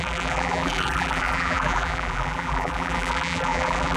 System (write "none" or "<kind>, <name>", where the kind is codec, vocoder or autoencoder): vocoder, BigVGAN v2